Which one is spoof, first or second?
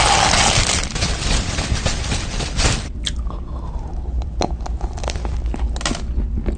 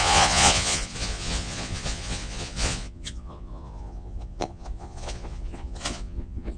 second